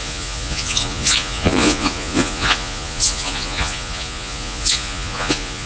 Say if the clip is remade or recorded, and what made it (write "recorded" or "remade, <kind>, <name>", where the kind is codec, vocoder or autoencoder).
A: remade, vocoder, Vocos